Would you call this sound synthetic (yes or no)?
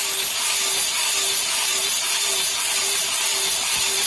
yes